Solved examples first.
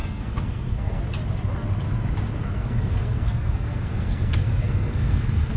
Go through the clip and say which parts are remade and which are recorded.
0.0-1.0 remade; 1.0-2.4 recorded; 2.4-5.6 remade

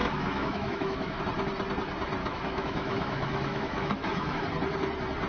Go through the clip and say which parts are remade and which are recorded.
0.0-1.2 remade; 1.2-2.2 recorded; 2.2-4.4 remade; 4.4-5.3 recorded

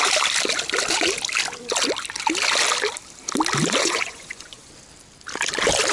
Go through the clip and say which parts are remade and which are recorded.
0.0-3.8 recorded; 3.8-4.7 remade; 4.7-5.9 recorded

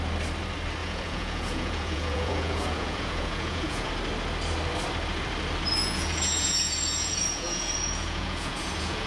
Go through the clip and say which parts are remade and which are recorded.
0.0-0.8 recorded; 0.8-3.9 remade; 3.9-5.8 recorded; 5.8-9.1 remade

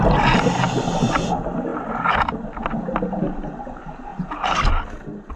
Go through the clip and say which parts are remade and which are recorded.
0.0-5.4 recorded

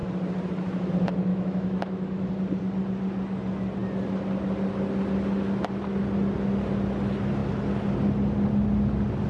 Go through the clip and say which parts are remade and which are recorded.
0.0-1.3 recorded; 1.3-2.3 remade; 2.3-9.3 recorded

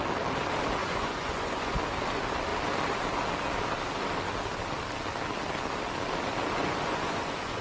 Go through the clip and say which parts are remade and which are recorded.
0.0-0.8 recorded; 0.8-1.7 remade; 1.7-6.6 recorded; 6.6-7.6 remade